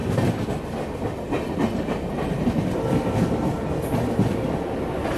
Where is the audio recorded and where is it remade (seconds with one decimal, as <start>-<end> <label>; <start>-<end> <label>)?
0.0-5.2 recorded